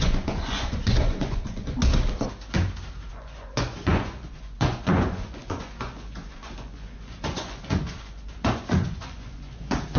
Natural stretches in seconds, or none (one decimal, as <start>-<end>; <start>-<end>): 1.8-3.1